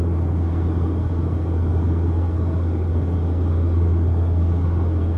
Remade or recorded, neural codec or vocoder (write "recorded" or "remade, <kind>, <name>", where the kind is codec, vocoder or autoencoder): remade, codec, SNAC